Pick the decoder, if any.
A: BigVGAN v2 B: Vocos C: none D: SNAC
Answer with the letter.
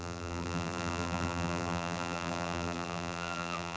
A